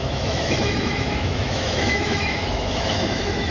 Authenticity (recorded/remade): remade